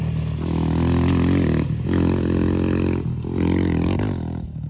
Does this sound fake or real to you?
real